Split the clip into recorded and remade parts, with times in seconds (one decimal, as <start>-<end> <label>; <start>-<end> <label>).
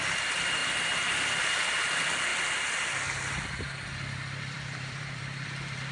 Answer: 0.0-2.3 remade; 2.3-4.4 recorded; 4.4-5.9 remade